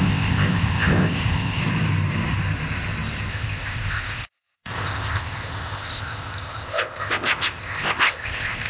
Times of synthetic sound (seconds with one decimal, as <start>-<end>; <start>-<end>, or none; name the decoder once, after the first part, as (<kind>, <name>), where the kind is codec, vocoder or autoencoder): 0.0-1.6 (codec, ZipCodec); 3.3-8.7